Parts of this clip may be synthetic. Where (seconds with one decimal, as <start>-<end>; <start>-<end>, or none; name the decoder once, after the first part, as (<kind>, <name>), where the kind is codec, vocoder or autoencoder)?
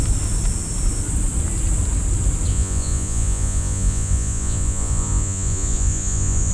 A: 2.5-6.5 (vocoder, Vocos)